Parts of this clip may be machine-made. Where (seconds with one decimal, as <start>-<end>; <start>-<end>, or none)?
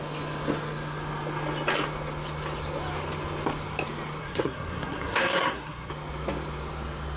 4.2-5.9